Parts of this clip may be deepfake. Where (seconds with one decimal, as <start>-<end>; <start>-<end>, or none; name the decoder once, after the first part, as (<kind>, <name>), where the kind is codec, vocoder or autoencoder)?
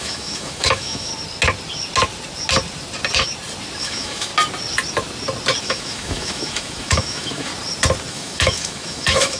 0.0-1.1 (autoencoder, DAC-VAE); 3.8-4.3; 5.6-7.5; 8.1-9.4